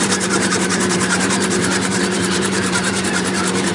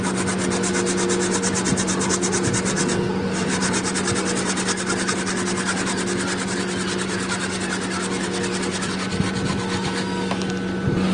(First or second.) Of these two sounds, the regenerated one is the first